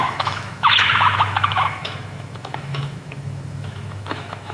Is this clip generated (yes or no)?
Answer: yes